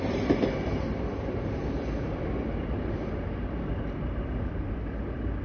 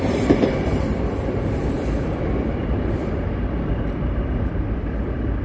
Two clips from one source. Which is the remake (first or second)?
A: second